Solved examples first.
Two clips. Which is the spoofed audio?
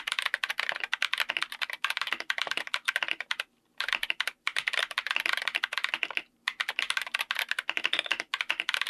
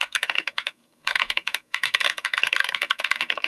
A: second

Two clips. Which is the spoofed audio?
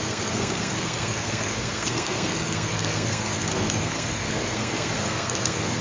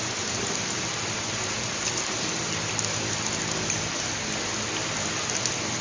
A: first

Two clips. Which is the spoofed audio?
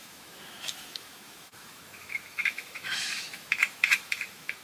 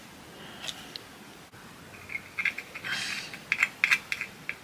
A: first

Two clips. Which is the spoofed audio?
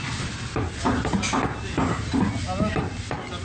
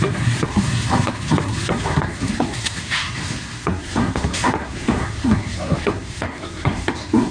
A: second